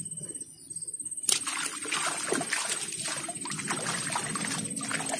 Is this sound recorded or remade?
recorded